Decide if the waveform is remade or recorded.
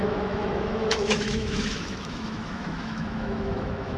remade